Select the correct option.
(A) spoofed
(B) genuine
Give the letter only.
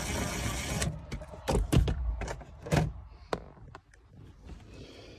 B